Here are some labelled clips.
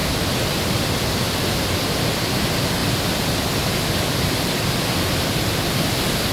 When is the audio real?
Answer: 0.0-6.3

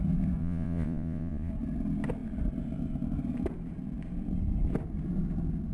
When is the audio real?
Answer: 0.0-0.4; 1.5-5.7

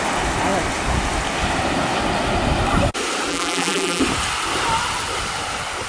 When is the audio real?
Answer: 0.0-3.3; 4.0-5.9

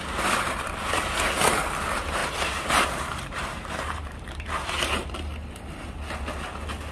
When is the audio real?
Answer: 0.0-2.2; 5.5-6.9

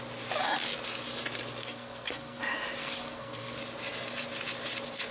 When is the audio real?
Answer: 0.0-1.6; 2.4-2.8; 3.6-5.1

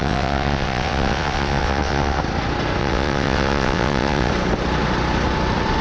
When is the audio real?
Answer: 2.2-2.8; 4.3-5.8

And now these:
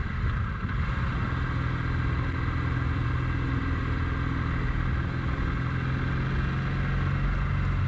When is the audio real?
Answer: 0.8-7.9